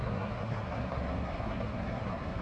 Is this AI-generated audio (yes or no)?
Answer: yes